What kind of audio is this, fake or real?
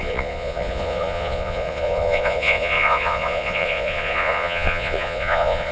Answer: fake